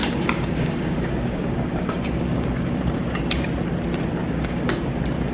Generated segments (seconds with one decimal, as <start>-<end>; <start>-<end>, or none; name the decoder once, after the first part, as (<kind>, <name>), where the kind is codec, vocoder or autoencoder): 0.0-3.2 (codec, DAC); 4.2-4.8